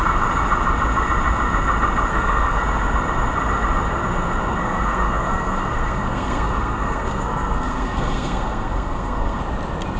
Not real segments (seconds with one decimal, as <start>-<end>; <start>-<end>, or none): 2.1-2.6; 4.6-9.4

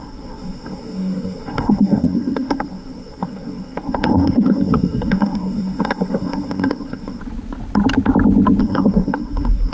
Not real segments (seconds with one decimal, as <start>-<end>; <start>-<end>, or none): 0.0-7.2; 8.6-9.7

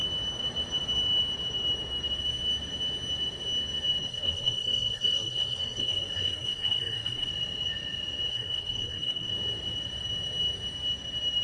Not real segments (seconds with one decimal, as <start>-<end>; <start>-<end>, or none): 4.0-7.3; 8.3-9.3

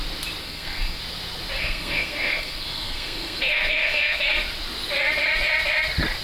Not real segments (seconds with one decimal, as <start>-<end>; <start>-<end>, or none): 0.4-1.0; 1.6-4.2